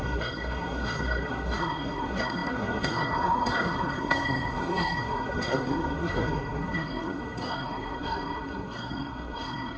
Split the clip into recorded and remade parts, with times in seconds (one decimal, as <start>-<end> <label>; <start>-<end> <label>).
0.0-9.8 remade